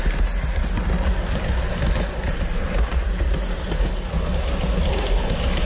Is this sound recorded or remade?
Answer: recorded